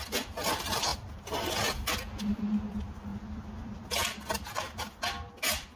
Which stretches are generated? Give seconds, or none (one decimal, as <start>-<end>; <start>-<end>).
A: 0.9-1.5; 3.1-4.3